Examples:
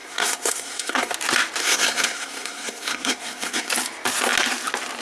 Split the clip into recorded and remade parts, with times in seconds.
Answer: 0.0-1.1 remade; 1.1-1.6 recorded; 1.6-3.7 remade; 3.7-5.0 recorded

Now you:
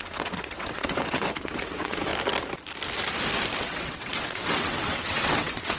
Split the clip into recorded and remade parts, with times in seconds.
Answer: 0.0-2.1 remade; 2.1-3.6 recorded; 3.6-5.8 remade

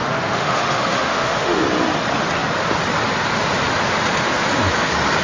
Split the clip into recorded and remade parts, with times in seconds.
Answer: 0.0-1.6 remade; 1.6-5.2 recorded

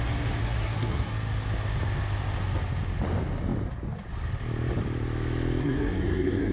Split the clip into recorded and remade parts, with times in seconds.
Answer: 0.0-0.4 recorded; 0.4-1.1 remade; 1.1-5.6 recorded; 5.6-6.5 remade

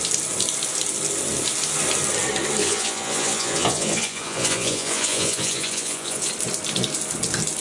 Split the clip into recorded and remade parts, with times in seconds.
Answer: 0.0-2.6 recorded; 2.6-6.3 remade; 6.3-7.6 recorded

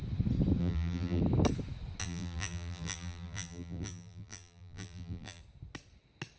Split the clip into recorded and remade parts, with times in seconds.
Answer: 0.0-0.6 recorded; 0.6-1.2 remade; 1.2-2.0 recorded; 2.0-5.4 remade; 5.4-6.4 recorded